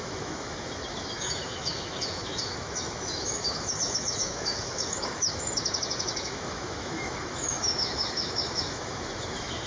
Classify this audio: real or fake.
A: fake